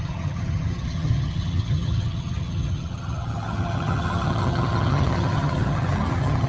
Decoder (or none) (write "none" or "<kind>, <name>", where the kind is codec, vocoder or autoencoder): vocoder, HiFi-GAN